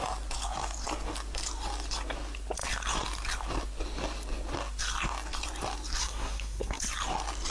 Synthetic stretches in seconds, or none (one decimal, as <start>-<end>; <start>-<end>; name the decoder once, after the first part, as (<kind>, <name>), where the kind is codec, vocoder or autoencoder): 6.0-6.8 (codec, SNAC)